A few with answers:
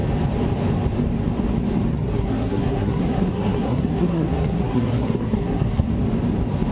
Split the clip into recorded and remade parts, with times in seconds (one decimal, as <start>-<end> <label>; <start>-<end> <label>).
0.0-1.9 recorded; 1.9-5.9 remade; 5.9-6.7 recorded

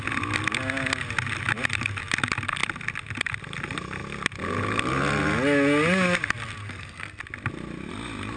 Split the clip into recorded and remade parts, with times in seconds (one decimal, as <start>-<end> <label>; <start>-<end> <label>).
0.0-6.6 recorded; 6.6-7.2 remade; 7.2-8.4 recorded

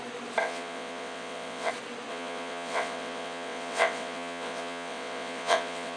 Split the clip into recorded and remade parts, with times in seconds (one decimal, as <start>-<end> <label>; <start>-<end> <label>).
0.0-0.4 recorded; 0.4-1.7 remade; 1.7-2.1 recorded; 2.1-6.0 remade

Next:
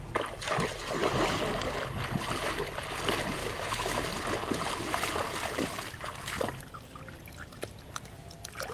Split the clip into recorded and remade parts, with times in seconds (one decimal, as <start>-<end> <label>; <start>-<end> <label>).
0.0-3.4 recorded; 3.4-4.0 remade; 4.0-8.7 recorded